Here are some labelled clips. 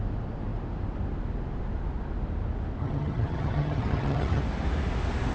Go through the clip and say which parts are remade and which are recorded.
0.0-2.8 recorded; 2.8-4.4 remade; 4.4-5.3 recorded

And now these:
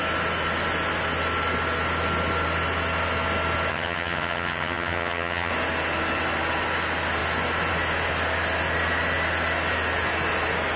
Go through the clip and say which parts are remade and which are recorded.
0.0-3.7 recorded; 3.7-5.5 remade; 5.5-10.8 recorded

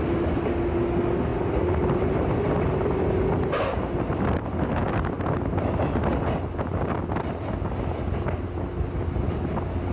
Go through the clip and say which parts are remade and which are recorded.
0.0-9.9 recorded

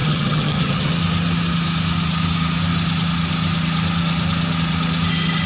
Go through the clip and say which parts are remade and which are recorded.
0.0-0.9 remade; 0.9-5.5 recorded

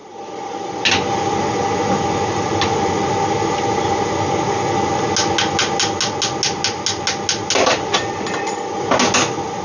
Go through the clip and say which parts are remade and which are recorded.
0.0-9.6 recorded

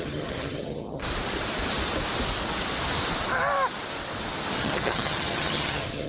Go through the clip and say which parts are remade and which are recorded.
0.0-1.0 remade; 1.0-4.6 recorded; 4.6-6.1 remade